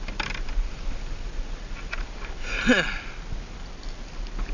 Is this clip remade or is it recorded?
recorded